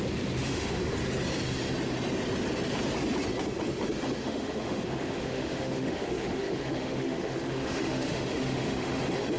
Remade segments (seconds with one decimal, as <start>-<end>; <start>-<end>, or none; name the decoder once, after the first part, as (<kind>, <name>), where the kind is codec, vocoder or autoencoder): 0.4-0.9 (autoencoder, DAC-VAE); 4.2-9.0